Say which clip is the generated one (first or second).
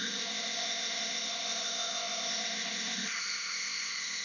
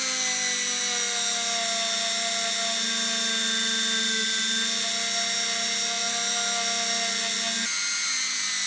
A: first